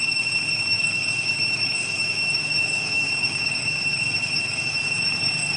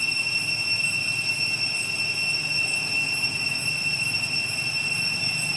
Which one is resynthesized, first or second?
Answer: first